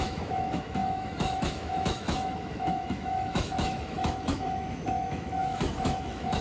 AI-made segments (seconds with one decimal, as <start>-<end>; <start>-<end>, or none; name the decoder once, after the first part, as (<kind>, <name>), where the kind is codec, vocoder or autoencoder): 0.0-6.4 (autoencoder, DAC-VAE)